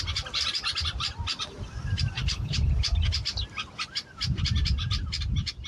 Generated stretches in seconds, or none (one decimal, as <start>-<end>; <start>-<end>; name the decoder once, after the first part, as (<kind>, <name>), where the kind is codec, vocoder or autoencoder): 2.2-2.7 (codec, HILCodec)